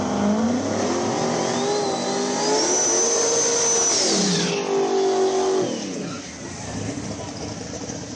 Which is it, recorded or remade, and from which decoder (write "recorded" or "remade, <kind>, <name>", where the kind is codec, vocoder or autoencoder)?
recorded